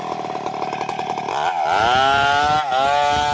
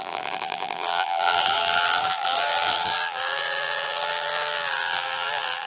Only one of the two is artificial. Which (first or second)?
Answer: second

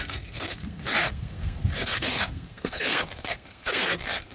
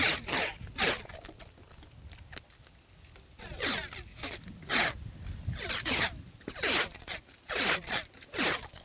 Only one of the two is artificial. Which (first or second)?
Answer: first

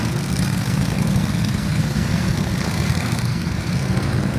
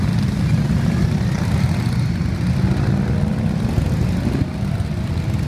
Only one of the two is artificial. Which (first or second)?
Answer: first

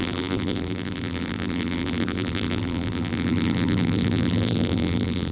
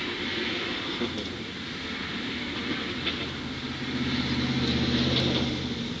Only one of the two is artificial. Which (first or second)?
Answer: first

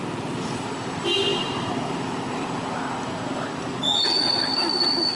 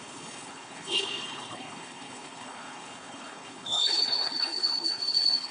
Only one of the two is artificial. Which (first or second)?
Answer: second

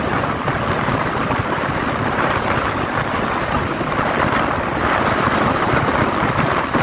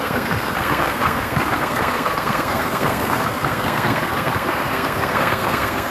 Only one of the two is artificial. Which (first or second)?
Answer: second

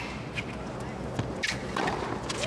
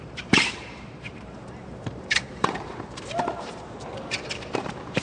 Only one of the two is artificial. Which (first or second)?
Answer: second